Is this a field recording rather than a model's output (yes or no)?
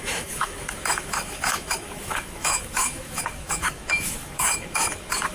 no